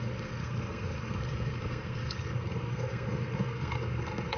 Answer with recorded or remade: remade